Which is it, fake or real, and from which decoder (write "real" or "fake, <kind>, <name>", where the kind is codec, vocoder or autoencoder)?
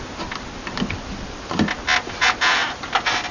real